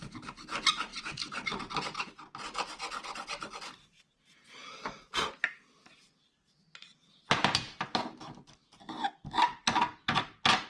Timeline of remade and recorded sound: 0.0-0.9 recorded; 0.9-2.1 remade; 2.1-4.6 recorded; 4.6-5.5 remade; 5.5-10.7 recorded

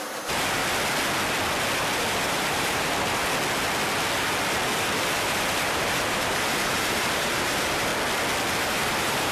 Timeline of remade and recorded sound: 0.0-0.6 remade; 0.6-2.2 recorded; 2.2-3.2 remade; 3.2-5.0 recorded; 5.0-7.9 remade; 7.9-8.7 recorded; 8.7-9.3 remade